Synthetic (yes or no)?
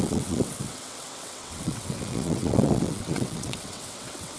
yes